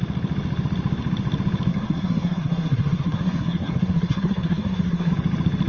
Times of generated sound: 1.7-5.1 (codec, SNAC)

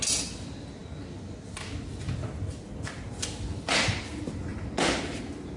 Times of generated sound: 3.5-4.0 (vocoder, BigVGAN v2)

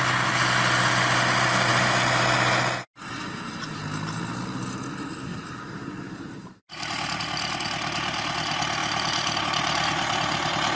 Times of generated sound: 5.3-7.2 (vocoder, BigVGAN v2); 8.8-9.4

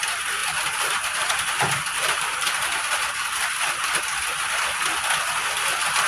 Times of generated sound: 0.4-3.1 (vocoder, BigVGAN v2)

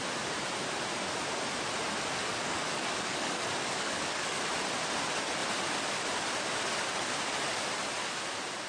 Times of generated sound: 2.3-4.5 (codec, DAC)